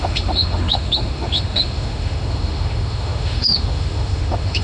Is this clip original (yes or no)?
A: no